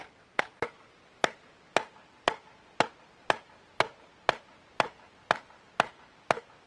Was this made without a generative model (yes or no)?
yes